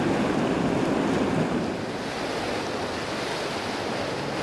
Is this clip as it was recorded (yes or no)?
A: yes